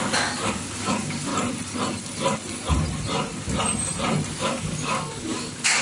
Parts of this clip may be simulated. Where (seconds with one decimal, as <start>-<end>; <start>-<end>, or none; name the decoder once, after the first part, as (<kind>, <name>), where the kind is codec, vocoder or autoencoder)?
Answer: 0.0-1.3 (codec, DAC); 4.3-5.8